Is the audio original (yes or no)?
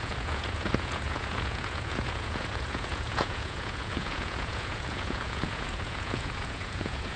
no